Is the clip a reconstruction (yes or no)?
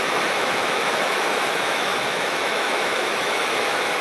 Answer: yes